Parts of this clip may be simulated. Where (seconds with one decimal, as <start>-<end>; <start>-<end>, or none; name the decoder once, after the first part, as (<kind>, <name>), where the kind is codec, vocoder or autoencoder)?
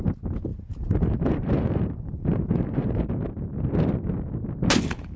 0.5-3.0 (vocoder, BigVGAN v2)